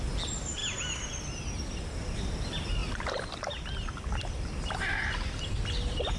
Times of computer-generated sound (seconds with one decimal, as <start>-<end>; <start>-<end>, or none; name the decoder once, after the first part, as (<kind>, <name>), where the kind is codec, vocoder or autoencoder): none